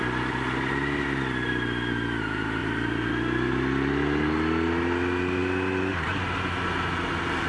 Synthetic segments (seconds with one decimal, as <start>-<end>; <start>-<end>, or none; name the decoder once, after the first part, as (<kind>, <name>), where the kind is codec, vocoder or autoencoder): none